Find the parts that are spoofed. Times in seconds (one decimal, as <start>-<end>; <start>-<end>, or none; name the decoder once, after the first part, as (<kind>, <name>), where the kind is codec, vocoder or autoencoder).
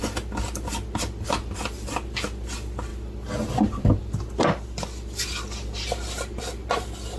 none